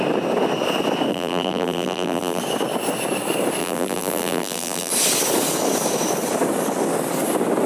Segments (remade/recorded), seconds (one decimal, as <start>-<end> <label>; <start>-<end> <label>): 0.0-1.1 recorded; 1.1-2.4 remade; 2.4-3.6 recorded; 3.6-4.9 remade; 4.9-7.7 recorded